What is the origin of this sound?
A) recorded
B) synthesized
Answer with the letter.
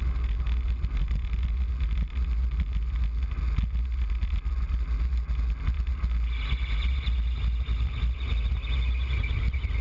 A